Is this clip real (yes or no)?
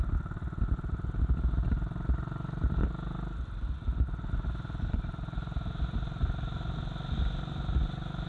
yes